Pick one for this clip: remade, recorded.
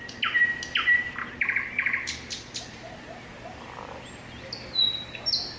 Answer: recorded